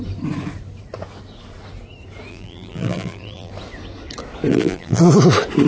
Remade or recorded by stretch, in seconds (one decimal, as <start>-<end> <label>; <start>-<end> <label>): 0.0-2.3 recorded; 2.3-3.5 remade; 3.5-4.5 recorded; 4.5-5.0 remade; 5.0-5.7 recorded